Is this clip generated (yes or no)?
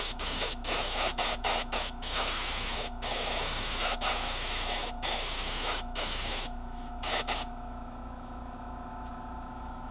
yes